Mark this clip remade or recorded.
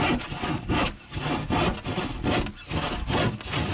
recorded